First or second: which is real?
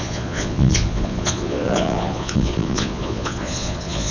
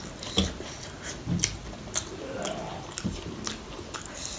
second